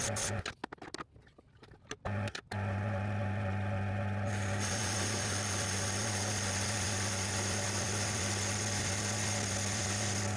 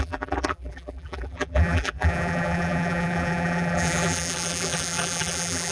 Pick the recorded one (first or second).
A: first